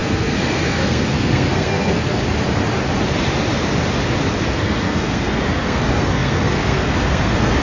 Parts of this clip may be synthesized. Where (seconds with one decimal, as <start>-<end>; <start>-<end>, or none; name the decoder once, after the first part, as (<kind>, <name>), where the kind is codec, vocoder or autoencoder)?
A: 0.0-2.2 (codec, SNAC); 4.5-7.6